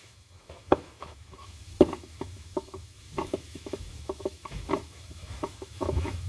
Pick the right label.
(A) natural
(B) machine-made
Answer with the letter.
B